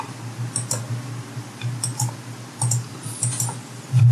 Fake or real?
real